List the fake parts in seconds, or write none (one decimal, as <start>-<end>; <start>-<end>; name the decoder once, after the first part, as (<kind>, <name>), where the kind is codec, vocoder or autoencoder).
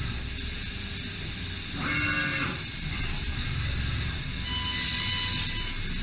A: 2.3-3.3 (vocoder, BigVGAN v2)